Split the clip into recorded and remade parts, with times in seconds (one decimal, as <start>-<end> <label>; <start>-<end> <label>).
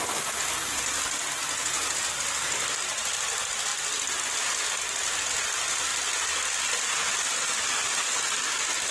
0.0-1.6 recorded; 1.6-2.1 remade; 2.1-8.9 recorded